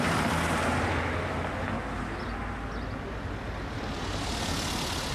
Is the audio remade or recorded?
recorded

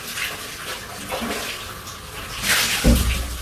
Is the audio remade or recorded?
recorded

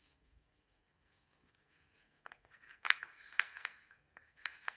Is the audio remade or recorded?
remade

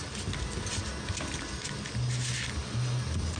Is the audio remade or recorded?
recorded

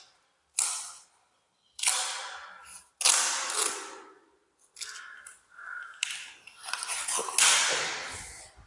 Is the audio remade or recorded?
recorded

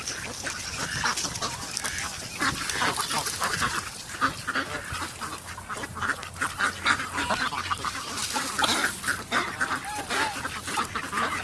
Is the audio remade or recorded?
recorded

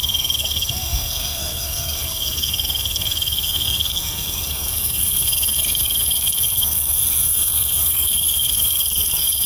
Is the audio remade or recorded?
remade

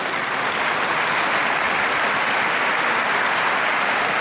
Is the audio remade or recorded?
recorded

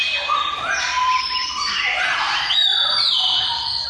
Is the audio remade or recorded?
remade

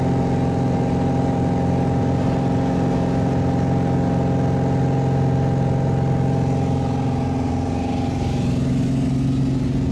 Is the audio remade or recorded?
recorded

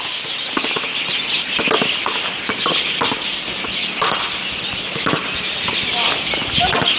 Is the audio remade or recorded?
recorded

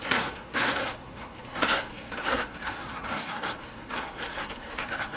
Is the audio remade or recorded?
remade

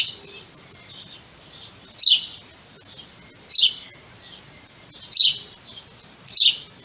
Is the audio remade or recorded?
recorded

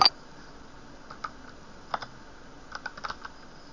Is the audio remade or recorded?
recorded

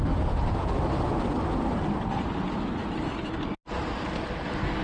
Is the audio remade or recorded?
recorded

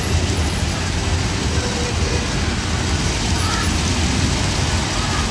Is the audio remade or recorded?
recorded